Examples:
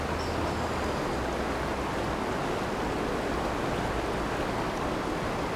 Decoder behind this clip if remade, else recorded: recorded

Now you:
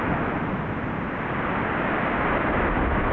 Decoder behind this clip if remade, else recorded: recorded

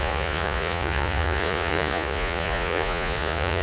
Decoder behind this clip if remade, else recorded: remade, vocoder, Vocos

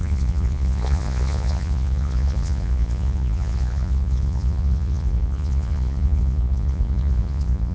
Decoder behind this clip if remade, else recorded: remade, vocoder, Vocos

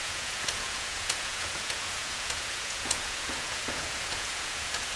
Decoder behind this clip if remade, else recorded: remade, vocoder, Vocos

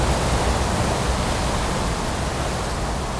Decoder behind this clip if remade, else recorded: recorded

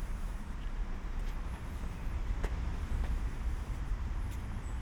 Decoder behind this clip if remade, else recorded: remade, vocoder, BigVGAN v2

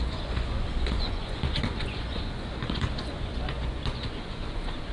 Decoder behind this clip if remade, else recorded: remade, vocoder, Vocos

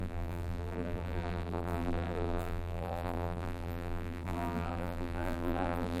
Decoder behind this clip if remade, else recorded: remade, vocoder, BigVGAN v2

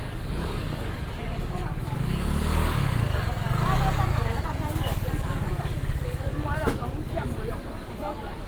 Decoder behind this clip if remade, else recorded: remade, codec, DAC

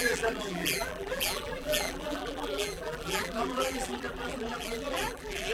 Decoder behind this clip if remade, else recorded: remade, vocoder, BigVGAN v2